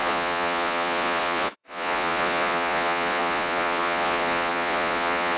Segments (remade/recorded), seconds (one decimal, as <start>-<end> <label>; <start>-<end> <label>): 0.0-5.4 remade